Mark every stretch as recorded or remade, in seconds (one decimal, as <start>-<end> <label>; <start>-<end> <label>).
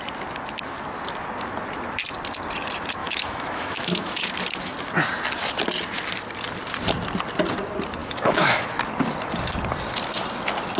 0.0-3.0 recorded; 3.0-4.3 remade; 4.3-8.0 recorded; 8.0-8.7 remade; 8.7-10.8 recorded